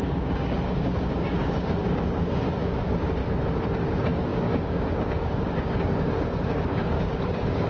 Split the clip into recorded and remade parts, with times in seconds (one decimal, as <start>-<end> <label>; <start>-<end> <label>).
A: 0.0-3.2 remade; 3.2-3.9 recorded; 3.9-7.7 remade

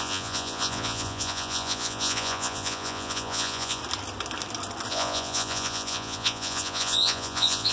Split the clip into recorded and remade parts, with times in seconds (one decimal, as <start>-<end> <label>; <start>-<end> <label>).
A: 0.0-3.8 remade; 3.8-4.9 recorded; 4.9-7.7 remade

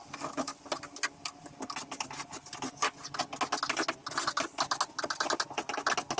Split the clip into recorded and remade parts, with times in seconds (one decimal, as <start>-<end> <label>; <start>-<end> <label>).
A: 0.0-6.2 recorded